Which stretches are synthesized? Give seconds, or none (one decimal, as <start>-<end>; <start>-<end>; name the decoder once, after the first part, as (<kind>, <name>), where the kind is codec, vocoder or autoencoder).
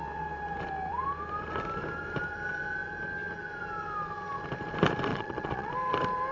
5.1-5.7 (vocoder, Vocos)